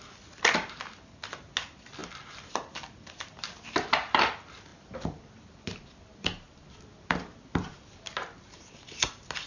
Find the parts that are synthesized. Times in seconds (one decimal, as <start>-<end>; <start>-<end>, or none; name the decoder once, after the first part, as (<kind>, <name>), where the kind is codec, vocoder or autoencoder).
none